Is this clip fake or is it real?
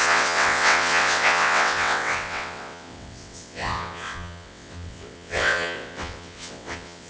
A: fake